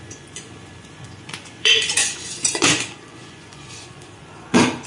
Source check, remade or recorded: remade